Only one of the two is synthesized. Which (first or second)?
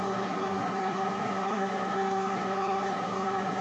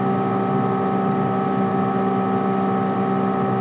first